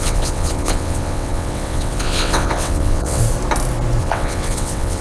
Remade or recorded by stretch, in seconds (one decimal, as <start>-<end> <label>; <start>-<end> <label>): 0.0-3.2 remade; 3.2-4.0 recorded; 4.0-5.0 remade